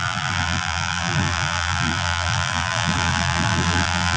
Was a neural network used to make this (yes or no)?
yes